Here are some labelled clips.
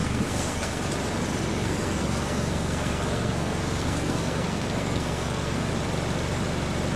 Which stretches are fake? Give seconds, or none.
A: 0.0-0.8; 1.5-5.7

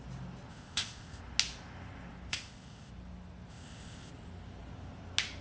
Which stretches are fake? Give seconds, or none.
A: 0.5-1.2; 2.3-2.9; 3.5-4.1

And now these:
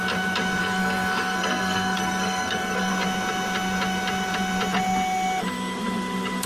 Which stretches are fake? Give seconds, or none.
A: 0.6-2.9

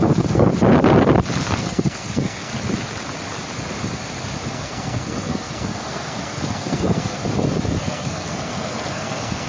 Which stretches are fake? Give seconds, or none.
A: 0.0-0.5; 1.4-2.5; 4.5-7.2; 7.8-9.5

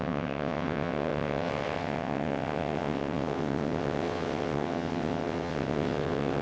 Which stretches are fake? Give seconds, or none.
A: 0.0-6.4